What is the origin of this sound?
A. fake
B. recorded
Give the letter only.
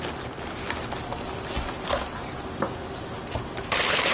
B